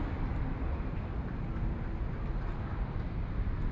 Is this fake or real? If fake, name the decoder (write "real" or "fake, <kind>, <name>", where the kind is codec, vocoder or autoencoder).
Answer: real